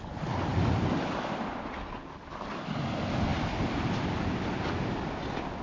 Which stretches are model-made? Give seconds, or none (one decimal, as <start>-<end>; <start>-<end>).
none

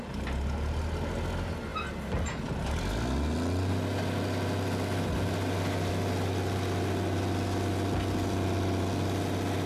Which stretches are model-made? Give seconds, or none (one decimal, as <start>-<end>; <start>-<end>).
none

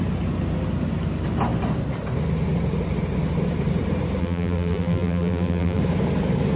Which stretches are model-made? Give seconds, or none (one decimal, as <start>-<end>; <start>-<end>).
4.2-5.8

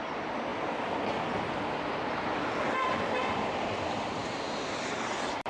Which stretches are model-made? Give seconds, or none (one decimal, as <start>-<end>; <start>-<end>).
0.0-0.5; 2.8-5.5